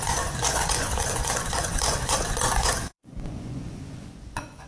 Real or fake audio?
fake